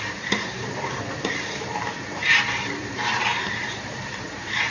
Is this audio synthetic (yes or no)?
yes